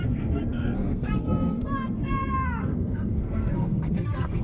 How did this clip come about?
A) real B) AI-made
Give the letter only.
B